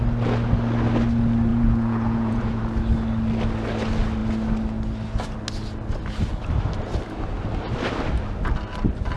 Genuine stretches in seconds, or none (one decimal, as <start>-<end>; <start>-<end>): 0.0-1.5; 2.6-9.2